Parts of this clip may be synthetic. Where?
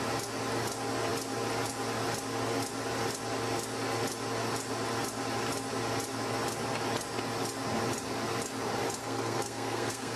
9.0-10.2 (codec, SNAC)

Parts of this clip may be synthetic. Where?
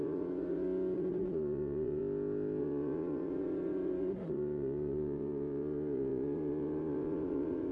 0.0-2.0 (vocoder, Vocos); 2.6-7.7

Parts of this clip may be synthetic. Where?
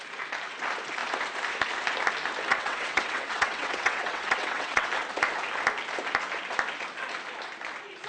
2.5-4.9 (vocoder, WaveNeXt)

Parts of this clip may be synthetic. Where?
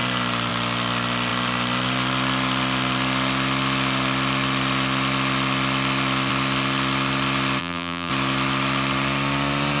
7.6-8.1 (vocoder, BigVGAN v2)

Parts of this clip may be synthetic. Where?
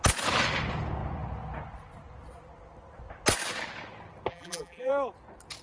4.3-4.9 (vocoder, BigVGAN v2)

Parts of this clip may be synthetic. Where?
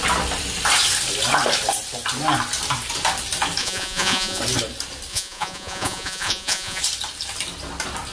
3.6-4.4 (vocoder, Vocos); 5.1-6.8